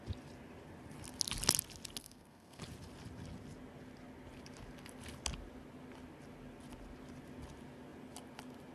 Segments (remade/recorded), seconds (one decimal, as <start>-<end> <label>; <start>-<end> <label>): 0.0-2.0 recorded; 2.0-2.6 remade; 2.6-8.7 recorded